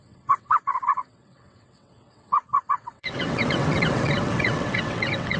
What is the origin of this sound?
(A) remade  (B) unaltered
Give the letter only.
A